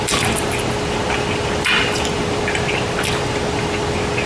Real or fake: fake